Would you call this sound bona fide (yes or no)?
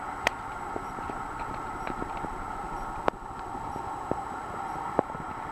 no